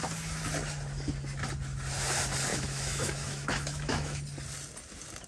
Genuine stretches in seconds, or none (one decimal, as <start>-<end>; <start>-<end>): 0.0-2.5; 4.2-5.3